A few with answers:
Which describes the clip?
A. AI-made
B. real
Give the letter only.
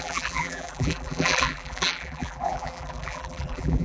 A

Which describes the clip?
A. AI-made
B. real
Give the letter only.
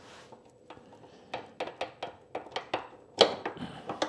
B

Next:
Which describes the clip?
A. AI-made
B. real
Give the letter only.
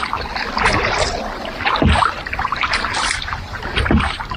B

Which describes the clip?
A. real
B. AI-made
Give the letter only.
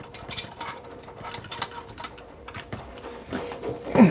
B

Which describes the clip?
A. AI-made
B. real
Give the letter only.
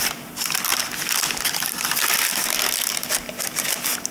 B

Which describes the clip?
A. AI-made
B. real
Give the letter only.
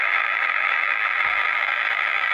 A